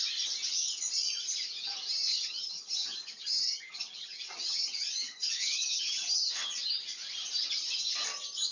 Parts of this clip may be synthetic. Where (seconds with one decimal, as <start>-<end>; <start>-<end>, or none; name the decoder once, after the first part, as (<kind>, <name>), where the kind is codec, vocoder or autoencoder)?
2.1-6.6 (vocoder, HiFi-GAN)